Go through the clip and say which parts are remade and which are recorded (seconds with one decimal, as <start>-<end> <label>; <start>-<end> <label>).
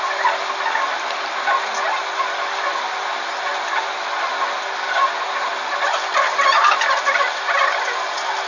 0.0-8.5 recorded